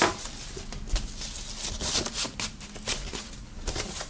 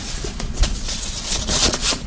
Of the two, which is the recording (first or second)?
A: first